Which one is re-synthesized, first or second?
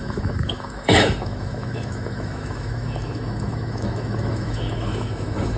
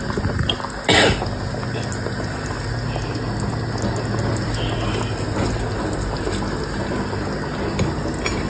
first